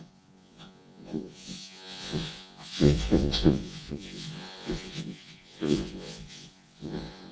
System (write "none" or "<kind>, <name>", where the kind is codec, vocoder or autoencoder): vocoder, Vocos